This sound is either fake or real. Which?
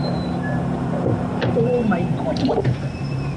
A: fake